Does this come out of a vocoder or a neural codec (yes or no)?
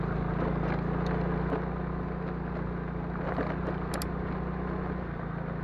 no